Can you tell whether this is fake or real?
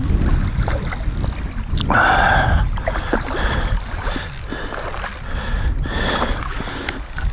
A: real